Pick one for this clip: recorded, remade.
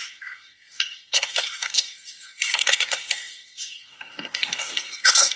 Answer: remade